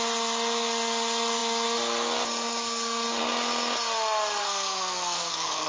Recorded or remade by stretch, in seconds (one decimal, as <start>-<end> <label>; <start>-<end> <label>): 0.0-4.4 recorded; 4.4-5.7 remade